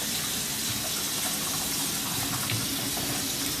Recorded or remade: recorded